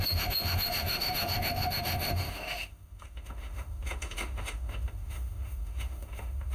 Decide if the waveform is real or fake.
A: fake